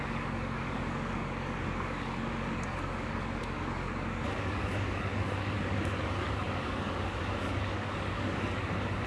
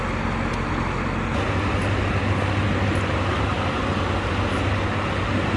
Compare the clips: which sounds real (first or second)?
second